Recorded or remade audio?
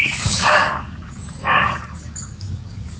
remade